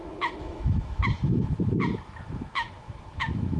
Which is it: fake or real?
fake